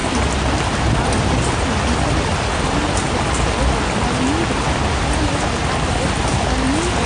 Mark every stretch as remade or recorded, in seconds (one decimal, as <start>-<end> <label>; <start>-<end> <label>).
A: 0.0-7.1 recorded